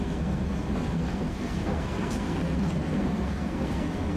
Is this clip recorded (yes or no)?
no